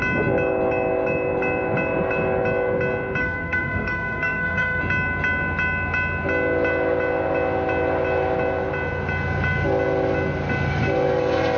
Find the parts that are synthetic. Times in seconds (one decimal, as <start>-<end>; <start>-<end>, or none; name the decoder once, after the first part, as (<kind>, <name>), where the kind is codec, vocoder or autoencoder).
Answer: 3.2-4.8 (codec, SNAC)